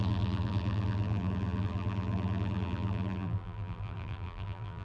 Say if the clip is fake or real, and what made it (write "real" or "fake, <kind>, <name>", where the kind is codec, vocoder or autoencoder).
fake, vocoder, BigVGAN v2